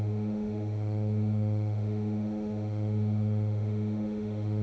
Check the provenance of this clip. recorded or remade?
remade